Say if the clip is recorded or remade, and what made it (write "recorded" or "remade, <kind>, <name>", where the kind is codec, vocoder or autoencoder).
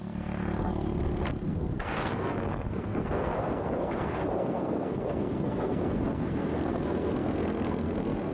remade, codec, SNAC